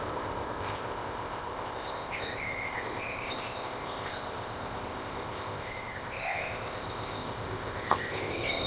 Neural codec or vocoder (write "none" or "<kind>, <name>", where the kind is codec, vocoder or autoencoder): codec, ZipCodec